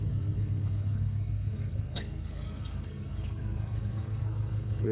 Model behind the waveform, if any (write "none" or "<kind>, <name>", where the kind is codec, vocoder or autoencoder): codec, SNAC